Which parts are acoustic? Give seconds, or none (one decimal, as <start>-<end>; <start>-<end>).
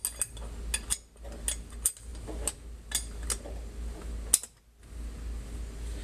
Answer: 0.0-6.0